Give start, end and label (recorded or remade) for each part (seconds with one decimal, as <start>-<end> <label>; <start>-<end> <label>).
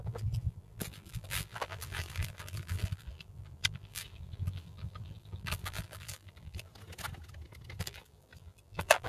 0.0-6.7 remade; 6.7-7.8 recorded; 7.8-9.1 remade